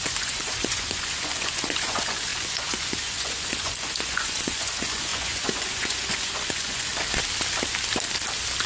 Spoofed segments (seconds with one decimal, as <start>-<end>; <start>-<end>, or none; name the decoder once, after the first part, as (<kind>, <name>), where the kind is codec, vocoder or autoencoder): 0.0-6.9 (vocoder, Vocos)